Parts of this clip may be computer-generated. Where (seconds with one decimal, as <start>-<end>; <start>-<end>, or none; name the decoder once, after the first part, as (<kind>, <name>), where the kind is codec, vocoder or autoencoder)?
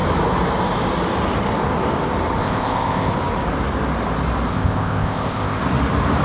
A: 2.4-3.1 (codec, ZipCodec); 4.5-5.6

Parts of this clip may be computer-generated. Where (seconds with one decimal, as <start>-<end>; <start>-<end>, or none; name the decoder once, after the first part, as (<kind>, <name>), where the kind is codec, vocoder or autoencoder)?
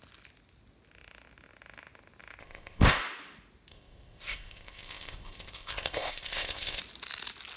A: 2.4-3.0 (codec, ZipCodec); 3.7-6.8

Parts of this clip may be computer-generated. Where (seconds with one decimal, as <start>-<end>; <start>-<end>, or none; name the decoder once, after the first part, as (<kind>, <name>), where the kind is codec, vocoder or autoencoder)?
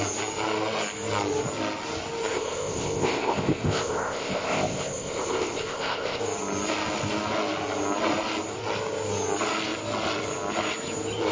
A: 2.3-6.2 (codec, ZipCodec)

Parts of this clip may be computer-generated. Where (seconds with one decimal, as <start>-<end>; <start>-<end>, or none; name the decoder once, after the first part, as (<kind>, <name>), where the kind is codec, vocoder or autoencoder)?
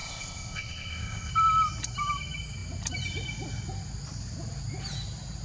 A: 0.0-1.3 (codec, ZipCodec)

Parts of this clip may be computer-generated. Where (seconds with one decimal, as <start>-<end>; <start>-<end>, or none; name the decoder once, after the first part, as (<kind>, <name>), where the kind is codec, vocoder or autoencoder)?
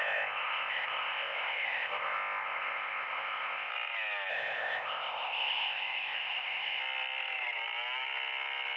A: 0.0-3.7 (codec, ZipCodec); 4.3-6.8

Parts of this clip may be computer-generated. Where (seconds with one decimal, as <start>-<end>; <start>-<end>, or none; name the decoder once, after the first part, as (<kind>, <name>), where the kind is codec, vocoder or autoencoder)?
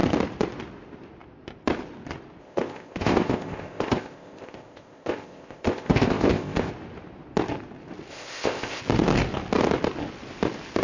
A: 2.4-6.7 (codec, ZipCodec); 8.1-8.8